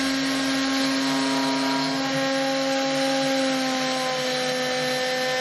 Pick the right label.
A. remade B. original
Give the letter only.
B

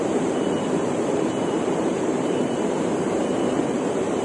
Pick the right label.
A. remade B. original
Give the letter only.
A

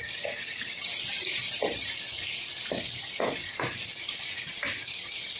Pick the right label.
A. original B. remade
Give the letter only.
A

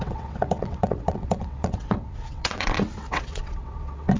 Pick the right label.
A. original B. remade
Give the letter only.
B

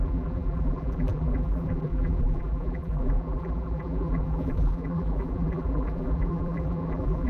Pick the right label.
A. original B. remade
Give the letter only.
B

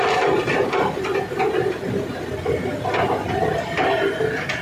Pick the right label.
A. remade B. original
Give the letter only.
B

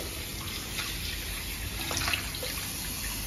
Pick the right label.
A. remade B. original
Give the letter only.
B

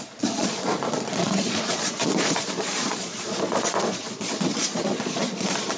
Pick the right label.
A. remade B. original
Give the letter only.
A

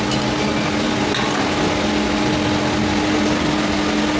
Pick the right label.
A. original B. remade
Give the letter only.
A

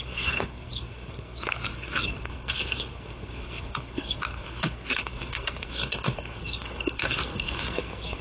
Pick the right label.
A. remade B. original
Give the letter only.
A